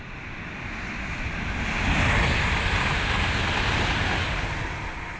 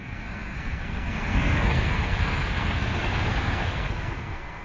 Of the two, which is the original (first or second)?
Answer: first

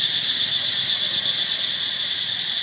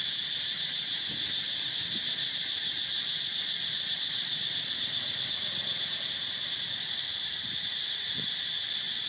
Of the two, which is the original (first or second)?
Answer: first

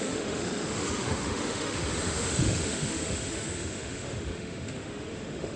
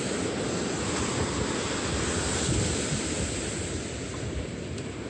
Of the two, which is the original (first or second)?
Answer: second